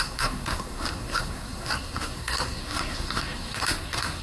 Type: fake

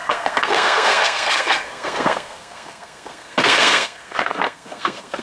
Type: fake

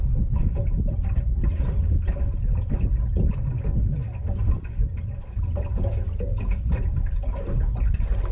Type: real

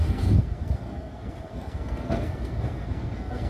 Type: fake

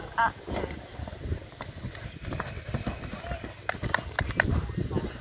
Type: real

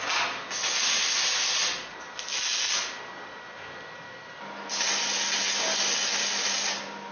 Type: real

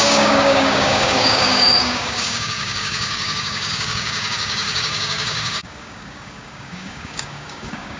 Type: fake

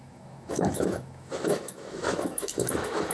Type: fake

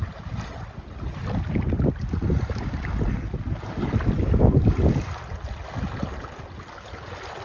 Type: real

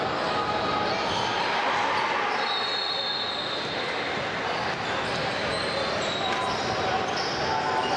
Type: real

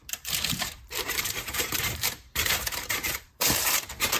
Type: fake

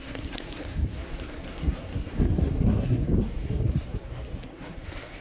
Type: fake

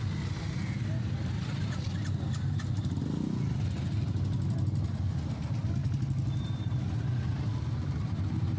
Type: real